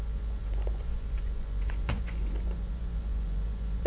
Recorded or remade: remade